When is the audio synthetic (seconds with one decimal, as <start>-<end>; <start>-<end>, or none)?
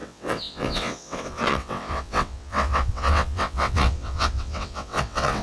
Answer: 0.0-5.4